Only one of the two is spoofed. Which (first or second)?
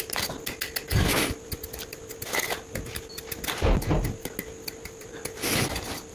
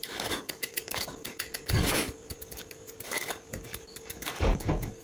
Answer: second